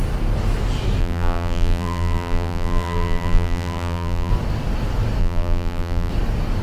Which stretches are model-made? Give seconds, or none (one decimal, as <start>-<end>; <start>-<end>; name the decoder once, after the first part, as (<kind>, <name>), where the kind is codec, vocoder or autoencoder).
1.0-4.3 (vocoder, BigVGAN v2); 5.2-6.1